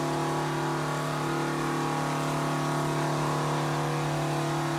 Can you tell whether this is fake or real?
real